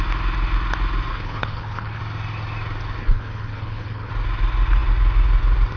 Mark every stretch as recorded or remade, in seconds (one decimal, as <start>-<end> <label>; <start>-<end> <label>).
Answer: 0.0-1.1 recorded; 1.1-2.0 remade; 2.0-3.0 recorded; 3.0-4.1 remade; 4.1-5.8 recorded